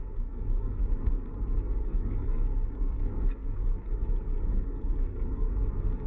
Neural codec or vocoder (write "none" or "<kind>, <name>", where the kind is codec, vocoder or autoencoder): codec, SNAC